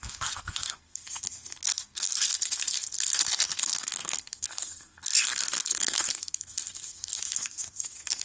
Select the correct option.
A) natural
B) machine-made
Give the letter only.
B